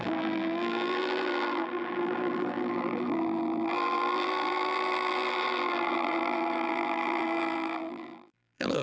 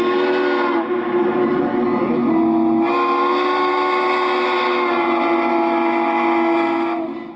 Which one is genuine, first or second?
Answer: second